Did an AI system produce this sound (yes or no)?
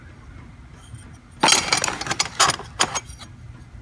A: no